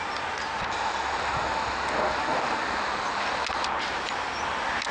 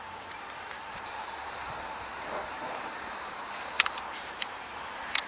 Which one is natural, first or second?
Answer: first